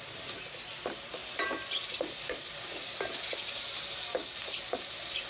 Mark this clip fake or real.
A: fake